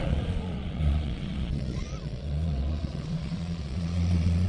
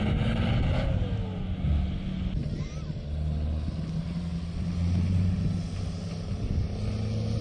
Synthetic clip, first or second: first